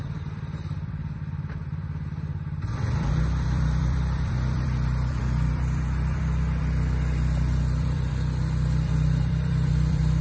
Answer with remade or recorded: remade